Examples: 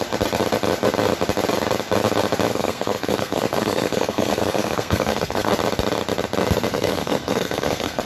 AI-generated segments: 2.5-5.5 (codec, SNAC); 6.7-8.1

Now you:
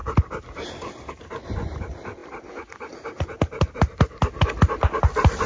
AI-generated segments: none